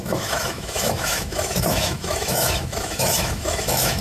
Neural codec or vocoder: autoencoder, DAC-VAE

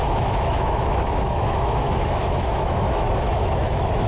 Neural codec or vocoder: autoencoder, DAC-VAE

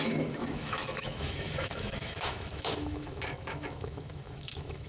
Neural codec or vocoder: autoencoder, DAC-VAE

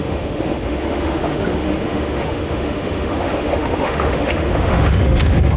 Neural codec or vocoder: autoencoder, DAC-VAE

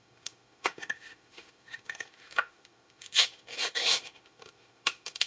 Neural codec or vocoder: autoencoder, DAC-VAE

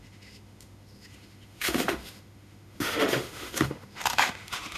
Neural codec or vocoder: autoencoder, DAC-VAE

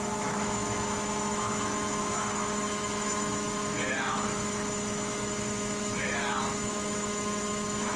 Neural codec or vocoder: autoencoder, DAC-VAE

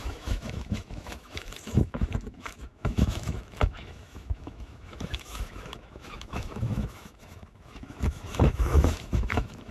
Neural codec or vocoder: autoencoder, DAC-VAE